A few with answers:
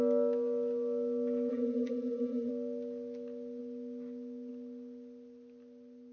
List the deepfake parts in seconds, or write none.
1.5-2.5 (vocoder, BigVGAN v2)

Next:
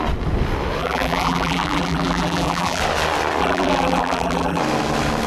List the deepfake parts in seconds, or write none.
0.8-2.8 (vocoder, BigVGAN v2); 3.4-4.6

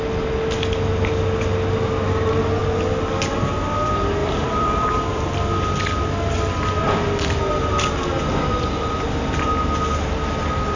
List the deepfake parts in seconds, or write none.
4.2-5.3 (vocoder, BigVGAN v2)

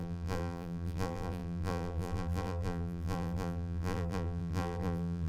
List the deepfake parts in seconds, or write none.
0.0-5.3 (vocoder, BigVGAN v2)

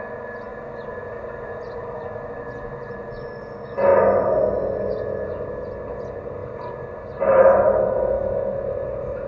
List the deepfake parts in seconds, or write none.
0.5-2.3 (vocoder, BigVGAN v2); 6.4-9.3

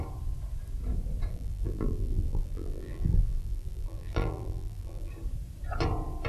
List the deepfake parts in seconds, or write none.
1.3-5.1 (vocoder, BigVGAN v2)

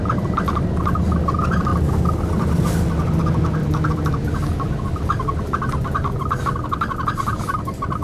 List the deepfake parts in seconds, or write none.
3.6-6.4 (vocoder, BigVGAN v2)